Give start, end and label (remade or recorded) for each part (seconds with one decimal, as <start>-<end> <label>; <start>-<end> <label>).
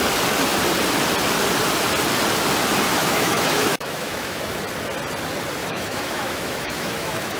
0.0-3.0 recorded; 3.0-4.4 remade; 4.4-5.6 recorded; 5.6-7.4 remade